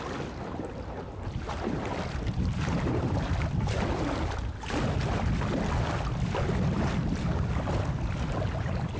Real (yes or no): yes